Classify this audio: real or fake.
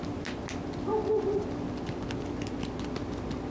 real